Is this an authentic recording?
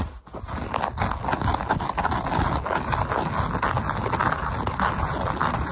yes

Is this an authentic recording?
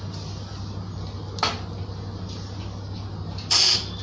yes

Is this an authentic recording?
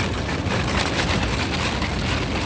yes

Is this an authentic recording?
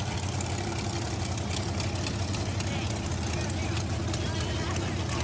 yes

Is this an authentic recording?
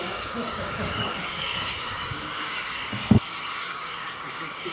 no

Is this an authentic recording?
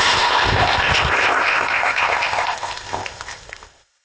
no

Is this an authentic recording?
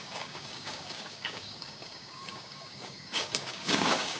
no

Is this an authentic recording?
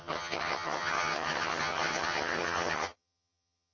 no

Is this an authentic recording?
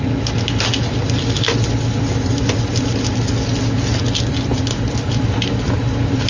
yes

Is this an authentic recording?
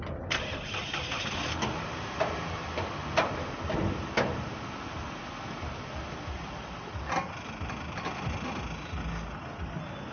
yes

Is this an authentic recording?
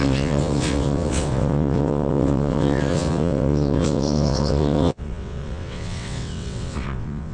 no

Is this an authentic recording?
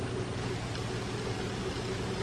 yes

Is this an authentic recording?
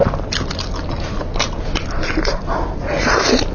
yes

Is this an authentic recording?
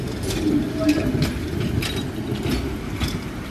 yes